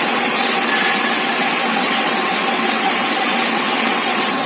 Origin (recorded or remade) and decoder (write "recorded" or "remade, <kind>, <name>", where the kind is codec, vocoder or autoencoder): remade, vocoder, WaveNeXt